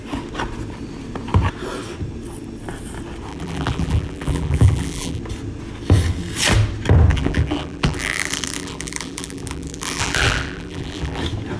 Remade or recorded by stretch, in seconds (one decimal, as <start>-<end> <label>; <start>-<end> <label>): 0.0-3.3 recorded; 3.3-5.2 remade; 5.2-7.1 recorded; 7.1-11.2 remade; 11.2-11.6 recorded